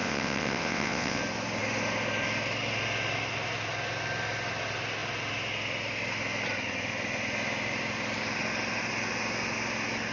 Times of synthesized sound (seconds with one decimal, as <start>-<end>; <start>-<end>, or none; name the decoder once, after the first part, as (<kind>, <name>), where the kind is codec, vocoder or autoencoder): 0.0-1.2 (vocoder, WaveNeXt)